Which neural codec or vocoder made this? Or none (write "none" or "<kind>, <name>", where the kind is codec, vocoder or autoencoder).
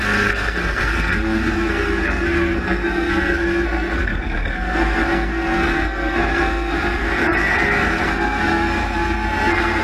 codec, SNAC